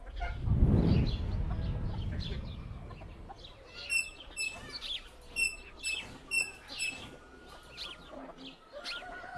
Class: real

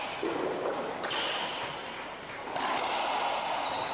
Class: real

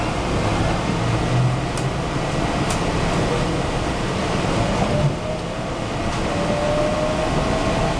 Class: real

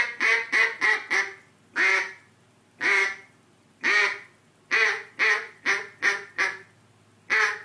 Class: real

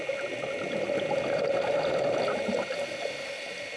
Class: real